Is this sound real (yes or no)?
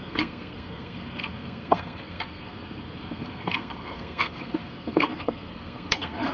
no